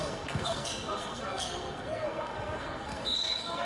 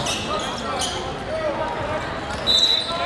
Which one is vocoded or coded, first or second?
first